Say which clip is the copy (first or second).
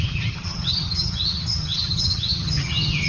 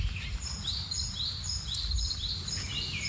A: first